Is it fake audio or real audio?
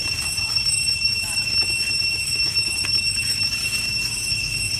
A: fake